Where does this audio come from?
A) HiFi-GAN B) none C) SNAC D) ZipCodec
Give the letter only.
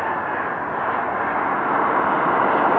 B